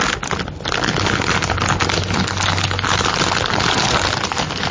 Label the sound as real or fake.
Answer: real